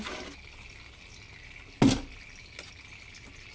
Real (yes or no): yes